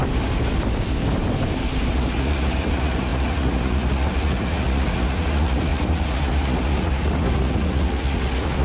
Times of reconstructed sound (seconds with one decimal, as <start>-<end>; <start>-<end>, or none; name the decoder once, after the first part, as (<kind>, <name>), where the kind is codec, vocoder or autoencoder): 1.9-8.6 (vocoder, Vocos)

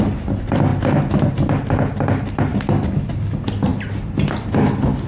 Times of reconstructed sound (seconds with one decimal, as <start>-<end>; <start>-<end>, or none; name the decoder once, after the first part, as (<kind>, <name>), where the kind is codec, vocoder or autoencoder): none

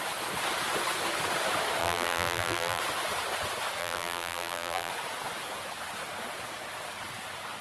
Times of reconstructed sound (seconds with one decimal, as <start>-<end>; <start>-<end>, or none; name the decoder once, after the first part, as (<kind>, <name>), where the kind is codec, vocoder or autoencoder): 1.8-2.8 (vocoder, BigVGAN v2); 3.8-4.9